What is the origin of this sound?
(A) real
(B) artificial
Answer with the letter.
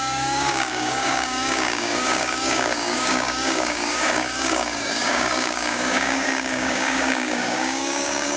B